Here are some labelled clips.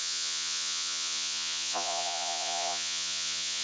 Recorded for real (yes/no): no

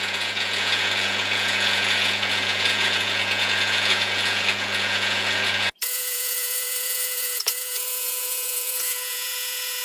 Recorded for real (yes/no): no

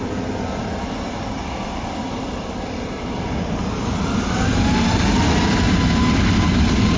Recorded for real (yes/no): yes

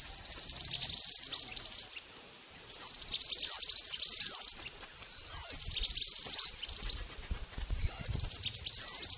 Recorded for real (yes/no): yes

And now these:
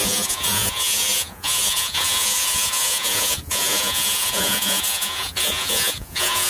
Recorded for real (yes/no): no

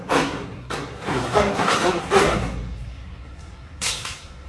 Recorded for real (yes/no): no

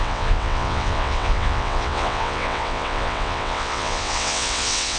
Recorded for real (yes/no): no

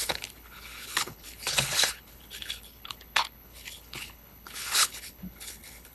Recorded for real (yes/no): no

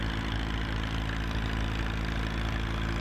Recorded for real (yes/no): yes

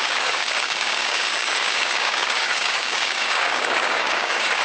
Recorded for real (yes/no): no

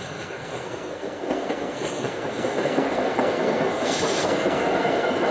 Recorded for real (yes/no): no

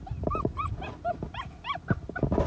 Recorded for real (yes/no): yes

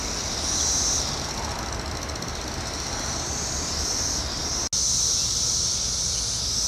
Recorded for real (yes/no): yes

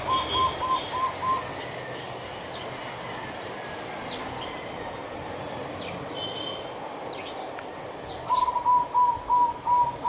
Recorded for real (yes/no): yes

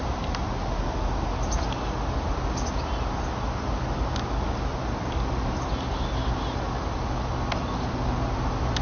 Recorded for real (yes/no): yes